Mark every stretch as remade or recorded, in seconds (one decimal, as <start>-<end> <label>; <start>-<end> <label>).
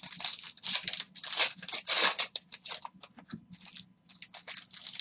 0.0-5.0 recorded